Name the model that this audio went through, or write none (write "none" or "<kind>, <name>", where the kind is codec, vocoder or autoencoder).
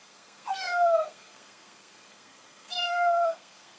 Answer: codec, SNAC